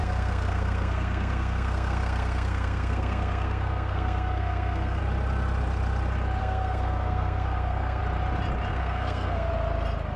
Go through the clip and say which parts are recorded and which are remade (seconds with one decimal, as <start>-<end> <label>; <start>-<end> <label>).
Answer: 0.0-5.0 remade; 5.0-6.4 recorded; 6.4-8.0 remade; 8.0-8.7 recorded; 8.7-9.5 remade; 9.5-10.2 recorded